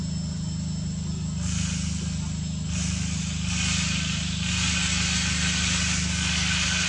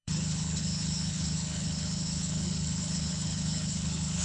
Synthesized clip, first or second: second